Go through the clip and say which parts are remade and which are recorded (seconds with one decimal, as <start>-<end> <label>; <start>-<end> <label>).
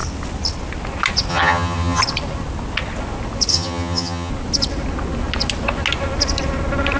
0.0-1.3 recorded; 1.3-2.0 remade; 2.0-3.5 recorded; 3.5-4.3 remade; 4.3-7.0 recorded